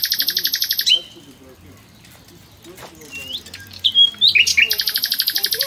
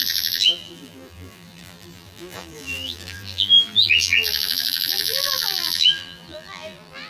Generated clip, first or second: second